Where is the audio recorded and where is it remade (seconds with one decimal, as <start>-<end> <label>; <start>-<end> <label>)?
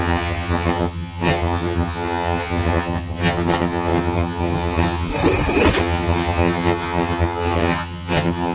0.0-5.1 remade; 5.1-5.8 recorded; 5.8-8.5 remade